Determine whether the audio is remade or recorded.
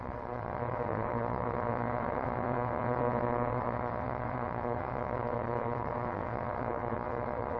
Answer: remade